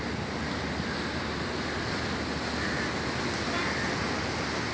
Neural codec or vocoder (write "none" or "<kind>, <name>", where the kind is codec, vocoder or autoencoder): none